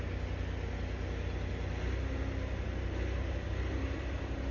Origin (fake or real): real